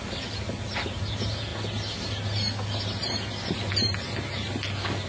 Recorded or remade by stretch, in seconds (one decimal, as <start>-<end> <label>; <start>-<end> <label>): 0.0-5.1 recorded

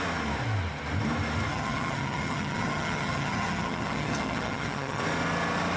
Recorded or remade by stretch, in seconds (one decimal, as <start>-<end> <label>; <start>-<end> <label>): 0.0-1.5 recorded; 1.5-5.0 remade; 5.0-5.8 recorded